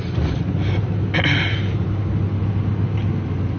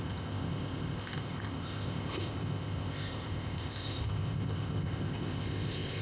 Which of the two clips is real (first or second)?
first